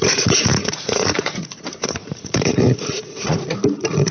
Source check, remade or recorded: remade